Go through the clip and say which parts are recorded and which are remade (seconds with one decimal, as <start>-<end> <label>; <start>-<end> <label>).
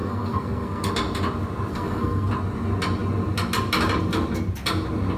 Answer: 0.0-0.9 remade; 0.9-1.7 recorded; 1.7-2.3 remade; 2.3-5.2 recorded